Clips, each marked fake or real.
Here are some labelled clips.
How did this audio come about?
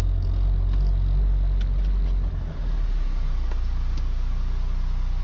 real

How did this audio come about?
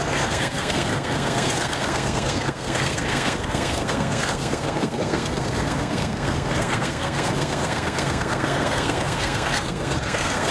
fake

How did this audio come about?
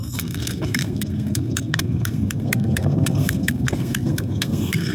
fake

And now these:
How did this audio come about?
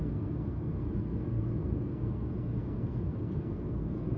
fake